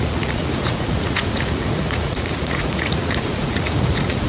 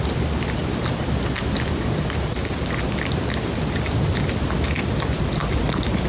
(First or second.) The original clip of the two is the second